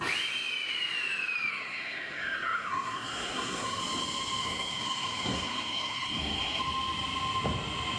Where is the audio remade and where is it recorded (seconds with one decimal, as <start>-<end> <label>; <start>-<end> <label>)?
0.0-1.5 recorded; 1.5-3.8 remade; 3.8-4.4 recorded; 4.4-6.6 remade; 6.6-8.0 recorded